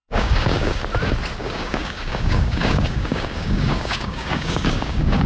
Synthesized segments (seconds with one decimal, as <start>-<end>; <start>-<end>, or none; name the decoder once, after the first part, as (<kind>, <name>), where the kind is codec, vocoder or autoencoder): 0.0-0.8 (codec, DAC); 1.4-5.3